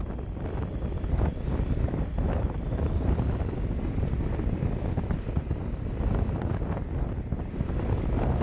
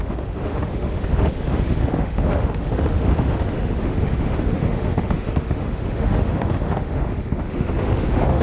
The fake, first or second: second